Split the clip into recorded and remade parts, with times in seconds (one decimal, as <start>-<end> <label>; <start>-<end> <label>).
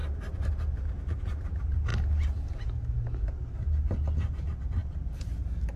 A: 0.0-0.5 remade; 0.5-5.8 recorded